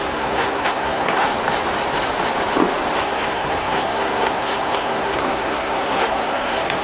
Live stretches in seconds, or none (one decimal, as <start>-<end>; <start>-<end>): 1.2-3.0